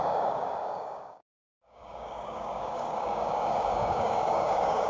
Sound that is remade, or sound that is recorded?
remade